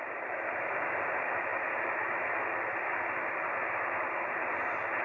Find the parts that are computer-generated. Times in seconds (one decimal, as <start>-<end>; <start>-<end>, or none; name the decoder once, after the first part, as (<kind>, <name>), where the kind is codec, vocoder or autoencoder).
0.0-5.0 (vocoder, BigVGAN v2)